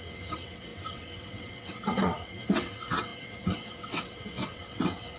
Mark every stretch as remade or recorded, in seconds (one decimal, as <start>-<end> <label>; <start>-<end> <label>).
0.0-5.2 remade